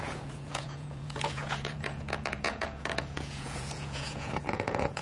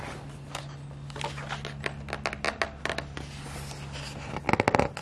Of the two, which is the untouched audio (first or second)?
second